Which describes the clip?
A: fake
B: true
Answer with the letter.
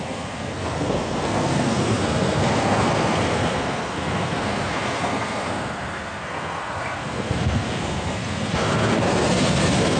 A